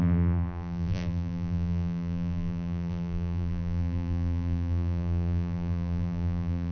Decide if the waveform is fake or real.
fake